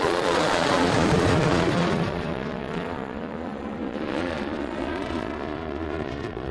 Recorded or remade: remade